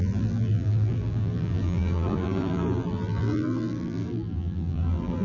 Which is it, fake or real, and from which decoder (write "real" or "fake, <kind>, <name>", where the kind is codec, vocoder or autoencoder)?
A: fake, vocoder, BigVGAN v2